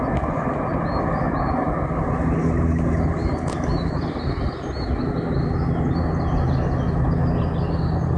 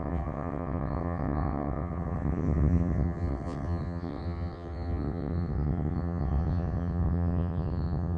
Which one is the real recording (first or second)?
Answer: first